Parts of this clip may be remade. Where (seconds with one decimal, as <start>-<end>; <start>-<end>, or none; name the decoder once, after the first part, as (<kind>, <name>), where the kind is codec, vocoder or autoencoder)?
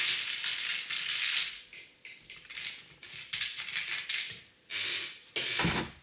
3.0-4.4 (vocoder, BigVGAN v2)